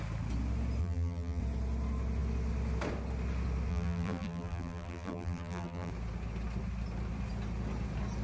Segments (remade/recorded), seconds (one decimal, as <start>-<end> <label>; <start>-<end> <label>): 0.0-0.8 recorded; 0.8-1.4 remade; 1.4-3.7 recorded; 3.7-5.9 remade; 5.9-8.2 recorded